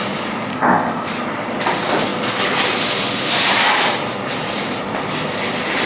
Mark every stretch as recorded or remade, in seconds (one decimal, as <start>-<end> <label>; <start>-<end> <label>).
0.0-0.5 recorded; 0.5-1.1 remade; 1.1-5.9 recorded